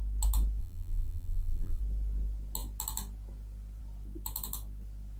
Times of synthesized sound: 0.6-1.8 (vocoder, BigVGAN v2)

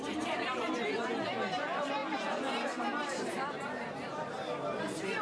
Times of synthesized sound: 0.0-5.2 (vocoder, BigVGAN v2)

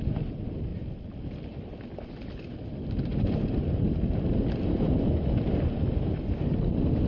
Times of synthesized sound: none

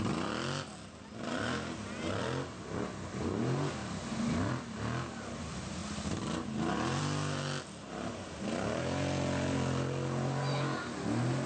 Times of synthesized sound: none